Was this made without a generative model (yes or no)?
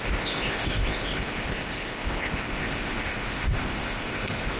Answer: no